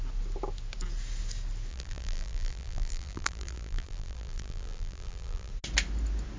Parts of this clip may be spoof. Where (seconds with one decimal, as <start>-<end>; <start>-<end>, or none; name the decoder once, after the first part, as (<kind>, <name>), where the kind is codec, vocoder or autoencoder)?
1.7-5.5 (vocoder, BigVGAN v2)